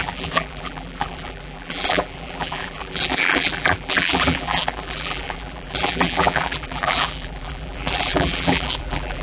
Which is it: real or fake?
fake